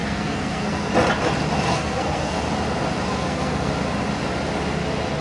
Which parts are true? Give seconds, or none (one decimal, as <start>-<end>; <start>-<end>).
0.9-1.7; 2.4-3.1; 3.7-5.2